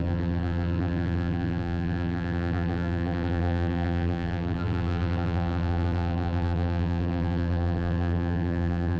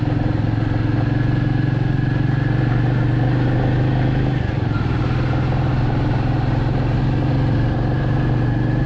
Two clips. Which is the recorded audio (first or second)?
second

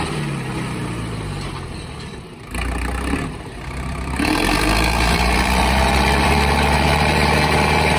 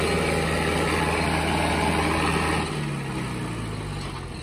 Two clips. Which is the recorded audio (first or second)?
second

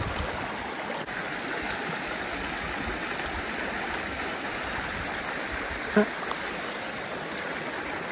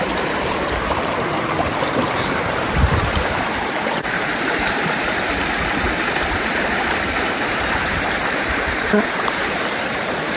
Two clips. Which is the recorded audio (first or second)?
first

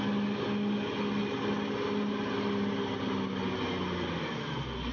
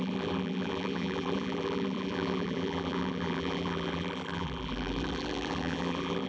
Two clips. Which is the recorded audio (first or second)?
first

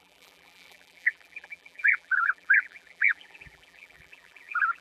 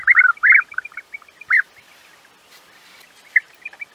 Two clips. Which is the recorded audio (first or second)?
second